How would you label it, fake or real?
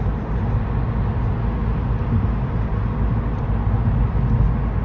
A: real